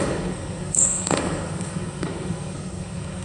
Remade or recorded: remade